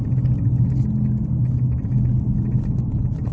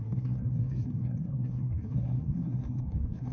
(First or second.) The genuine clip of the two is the first